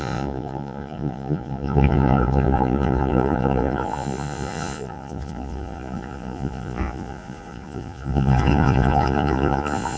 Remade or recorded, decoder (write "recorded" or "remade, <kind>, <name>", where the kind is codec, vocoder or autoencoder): remade, vocoder, Vocos